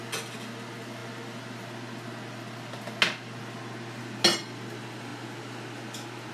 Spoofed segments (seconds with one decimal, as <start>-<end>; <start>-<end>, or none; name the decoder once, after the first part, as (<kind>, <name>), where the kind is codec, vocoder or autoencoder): none